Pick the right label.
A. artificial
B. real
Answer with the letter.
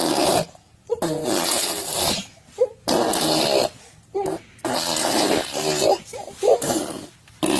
B